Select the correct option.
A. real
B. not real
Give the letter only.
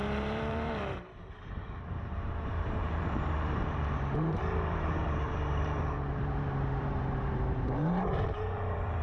B